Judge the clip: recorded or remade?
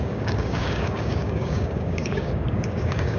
remade